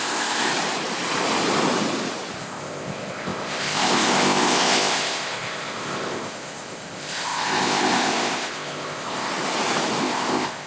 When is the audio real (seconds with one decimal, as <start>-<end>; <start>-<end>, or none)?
0.5-2.4; 9.3-10.0